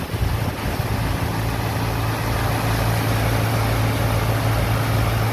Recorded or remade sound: recorded